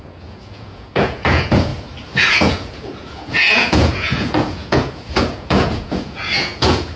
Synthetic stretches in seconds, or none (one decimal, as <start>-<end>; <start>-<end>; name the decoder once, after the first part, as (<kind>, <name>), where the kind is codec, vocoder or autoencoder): 0.0-1.7 (vocoder, Vocos); 2.3-7.0